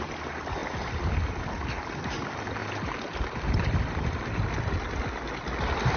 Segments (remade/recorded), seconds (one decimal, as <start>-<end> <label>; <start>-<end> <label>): 0.0-0.6 recorded; 0.6-1.3 remade; 1.3-2.6 recorded; 2.6-4.9 remade; 4.9-6.0 recorded